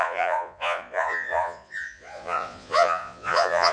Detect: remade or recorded remade